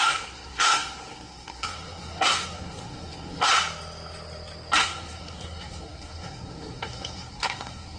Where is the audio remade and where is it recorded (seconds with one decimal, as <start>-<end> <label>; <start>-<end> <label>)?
0.0-3.5 remade; 3.5-4.8 recorded; 4.8-8.0 remade